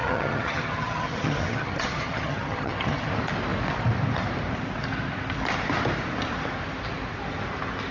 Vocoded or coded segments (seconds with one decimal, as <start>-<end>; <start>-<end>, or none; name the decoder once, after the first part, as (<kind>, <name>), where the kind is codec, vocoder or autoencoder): 0.0-3.1 (vocoder, HiFi-GAN)

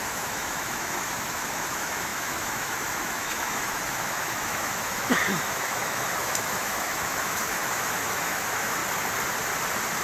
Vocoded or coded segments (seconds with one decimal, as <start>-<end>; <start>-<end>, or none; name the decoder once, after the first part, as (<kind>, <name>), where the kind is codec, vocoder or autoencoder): 0.0-8.8 (autoencoder, DAC-VAE)

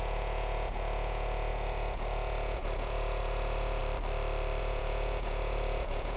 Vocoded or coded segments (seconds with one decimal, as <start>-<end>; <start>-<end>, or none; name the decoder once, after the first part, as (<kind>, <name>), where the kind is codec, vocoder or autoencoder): 0.0-3.8 (vocoder, Vocos); 4.6-6.2

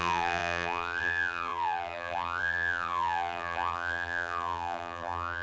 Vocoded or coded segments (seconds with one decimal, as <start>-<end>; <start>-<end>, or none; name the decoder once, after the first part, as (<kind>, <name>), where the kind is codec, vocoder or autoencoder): 0.0-5.4 (vocoder, BigVGAN v2)

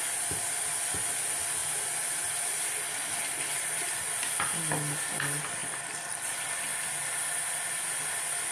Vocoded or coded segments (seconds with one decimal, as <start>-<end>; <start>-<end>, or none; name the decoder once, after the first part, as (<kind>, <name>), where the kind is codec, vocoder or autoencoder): none

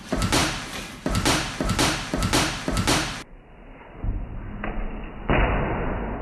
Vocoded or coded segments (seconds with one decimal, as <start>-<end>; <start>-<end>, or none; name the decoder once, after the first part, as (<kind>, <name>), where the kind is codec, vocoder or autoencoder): none